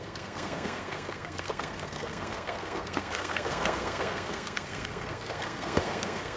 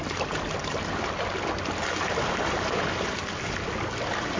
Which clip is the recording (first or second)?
second